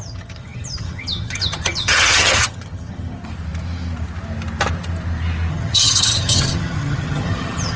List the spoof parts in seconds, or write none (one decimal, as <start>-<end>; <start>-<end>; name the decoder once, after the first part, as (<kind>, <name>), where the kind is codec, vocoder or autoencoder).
0.0-3.2 (vocoder, HiFi-GAN); 5.5-7.8